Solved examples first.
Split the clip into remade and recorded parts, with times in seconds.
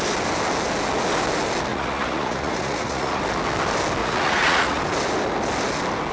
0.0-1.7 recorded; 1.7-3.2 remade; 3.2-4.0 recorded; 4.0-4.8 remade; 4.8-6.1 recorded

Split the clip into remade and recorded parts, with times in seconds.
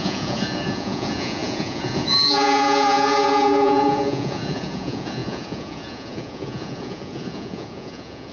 0.0-8.3 remade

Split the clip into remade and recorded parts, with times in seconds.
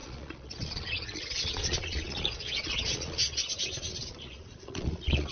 0.0-5.3 remade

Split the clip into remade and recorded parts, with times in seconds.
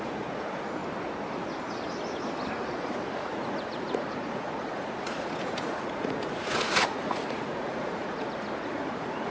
0.0-0.8 remade; 0.8-2.5 recorded; 2.5-9.3 remade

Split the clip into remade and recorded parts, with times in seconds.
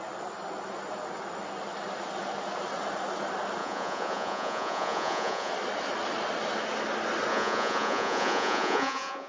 0.0-3.6 recorded; 3.6-5.5 remade; 5.5-7.3 recorded; 7.3-9.3 remade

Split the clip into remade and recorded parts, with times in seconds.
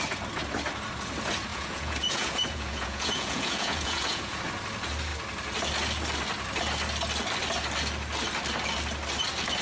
0.0-1.5 recorded; 1.5-4.4 remade; 4.4-9.6 recorded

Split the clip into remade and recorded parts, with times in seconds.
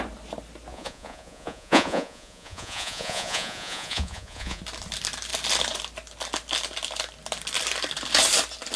0.0-0.7 recorded; 0.7-4.6 remade; 4.6-8.8 recorded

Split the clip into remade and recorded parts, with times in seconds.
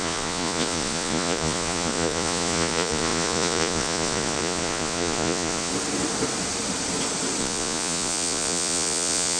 0.0-5.7 remade; 5.7-7.4 recorded; 7.4-9.4 remade